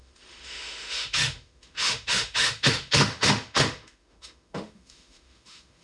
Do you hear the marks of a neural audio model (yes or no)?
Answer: yes